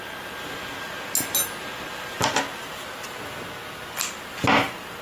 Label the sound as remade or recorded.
recorded